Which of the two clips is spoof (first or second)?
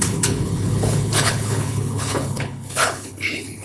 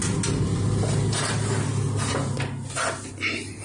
first